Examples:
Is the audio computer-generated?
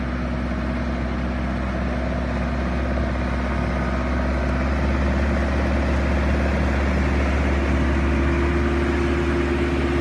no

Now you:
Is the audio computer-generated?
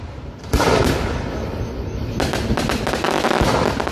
no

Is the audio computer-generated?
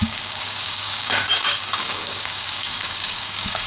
yes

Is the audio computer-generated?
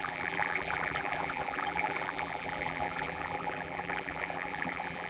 yes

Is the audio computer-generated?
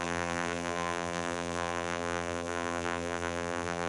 yes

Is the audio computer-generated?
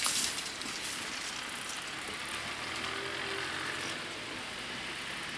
no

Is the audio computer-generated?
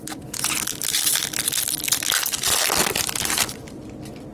no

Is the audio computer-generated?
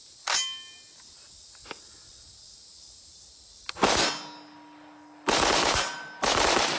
no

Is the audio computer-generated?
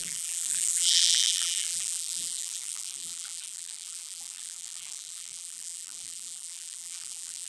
yes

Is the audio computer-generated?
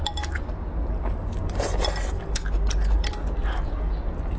no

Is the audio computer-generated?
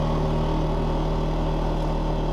no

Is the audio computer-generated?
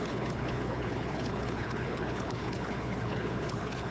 yes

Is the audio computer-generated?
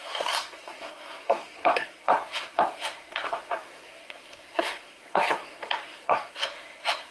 yes